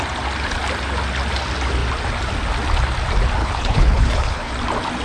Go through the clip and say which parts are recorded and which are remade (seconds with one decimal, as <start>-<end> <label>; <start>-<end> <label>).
0.0-3.4 recorded; 3.4-4.5 remade; 4.5-5.0 recorded